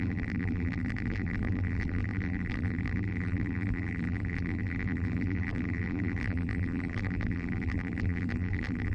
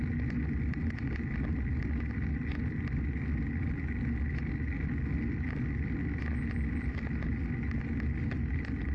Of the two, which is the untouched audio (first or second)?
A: second